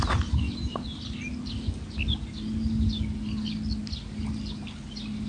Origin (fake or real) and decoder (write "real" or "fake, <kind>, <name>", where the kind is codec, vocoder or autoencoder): real